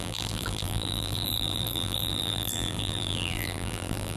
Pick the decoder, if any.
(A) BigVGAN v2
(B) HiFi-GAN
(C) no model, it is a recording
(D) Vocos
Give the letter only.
A